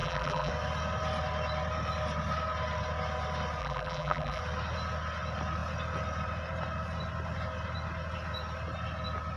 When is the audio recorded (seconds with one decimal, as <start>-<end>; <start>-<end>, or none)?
0.5-3.6; 4.4-9.4